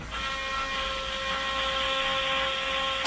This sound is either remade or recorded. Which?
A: recorded